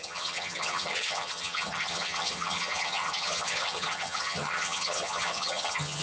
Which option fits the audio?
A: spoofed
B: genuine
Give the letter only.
A